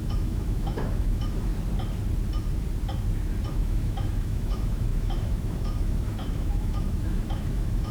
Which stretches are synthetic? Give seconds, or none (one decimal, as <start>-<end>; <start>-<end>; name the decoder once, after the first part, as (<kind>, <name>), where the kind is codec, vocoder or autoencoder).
0.0-1.5 (autoencoder, DAC-VAE); 3.5-7.9